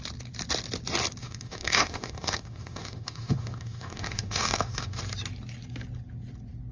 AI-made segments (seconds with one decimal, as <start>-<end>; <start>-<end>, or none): 1.2-5.0